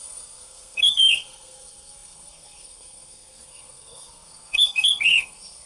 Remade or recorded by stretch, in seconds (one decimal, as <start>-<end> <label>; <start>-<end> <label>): 0.0-5.7 remade